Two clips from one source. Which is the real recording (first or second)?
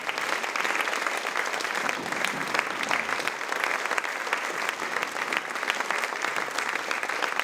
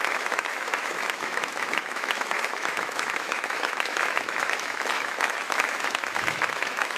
first